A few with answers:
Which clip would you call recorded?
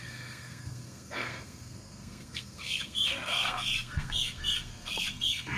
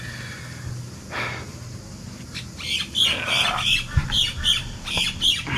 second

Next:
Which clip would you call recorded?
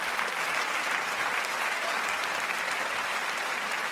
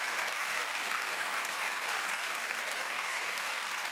first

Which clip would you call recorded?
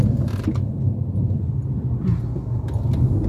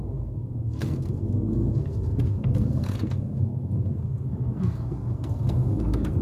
first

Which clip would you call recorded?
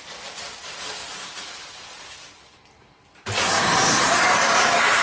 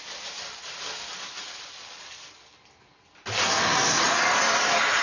second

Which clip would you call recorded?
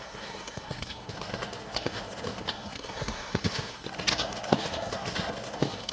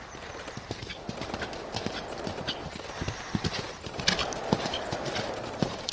second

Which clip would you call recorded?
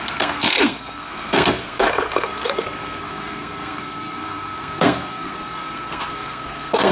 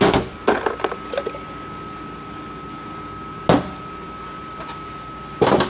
second